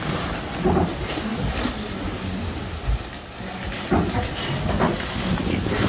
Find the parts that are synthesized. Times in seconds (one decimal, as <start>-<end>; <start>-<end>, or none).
none

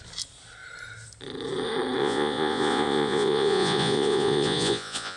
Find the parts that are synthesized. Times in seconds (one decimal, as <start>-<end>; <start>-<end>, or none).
2.0-5.2